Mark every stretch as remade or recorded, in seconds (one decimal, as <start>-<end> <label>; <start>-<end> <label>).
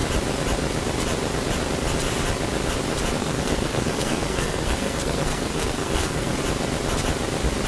0.0-3.2 recorded; 3.2-6.4 remade; 6.4-7.7 recorded